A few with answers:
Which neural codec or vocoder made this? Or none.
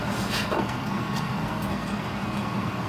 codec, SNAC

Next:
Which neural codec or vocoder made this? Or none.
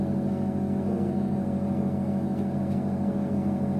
codec, SNAC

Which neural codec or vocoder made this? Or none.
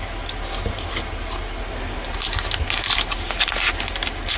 none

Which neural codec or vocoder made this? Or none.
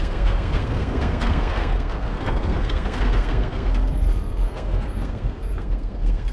codec, SNAC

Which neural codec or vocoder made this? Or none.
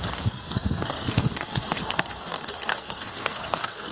codec, SNAC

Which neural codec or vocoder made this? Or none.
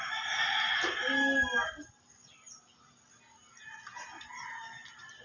none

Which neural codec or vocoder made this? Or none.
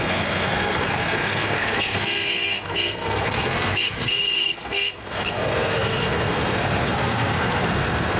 codec, SNAC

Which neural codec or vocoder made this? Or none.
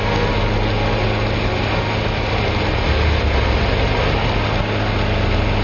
none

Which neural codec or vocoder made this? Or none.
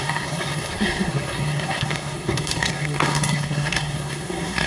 codec, SNAC